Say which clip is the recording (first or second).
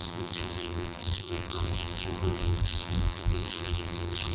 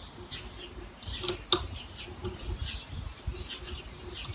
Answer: second